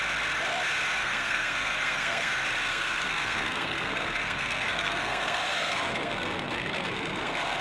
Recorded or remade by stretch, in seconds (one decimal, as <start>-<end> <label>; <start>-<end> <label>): 0.0-1.0 recorded; 1.0-2.3 remade; 2.3-2.7 recorded; 2.7-7.6 remade